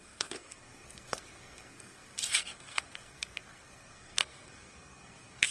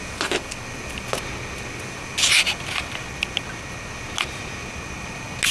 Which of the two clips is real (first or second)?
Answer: second